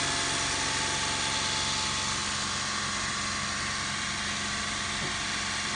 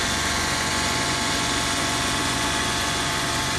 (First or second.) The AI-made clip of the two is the second